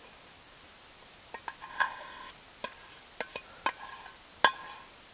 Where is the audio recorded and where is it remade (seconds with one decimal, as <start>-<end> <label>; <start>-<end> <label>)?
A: 0.0-1.7 recorded; 1.7-2.3 remade; 2.3-5.1 recorded